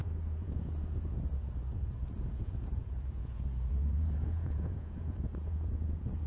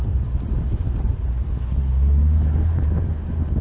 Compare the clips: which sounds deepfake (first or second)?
first